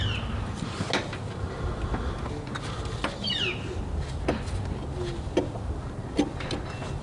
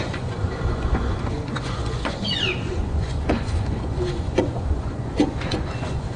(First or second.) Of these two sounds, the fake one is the second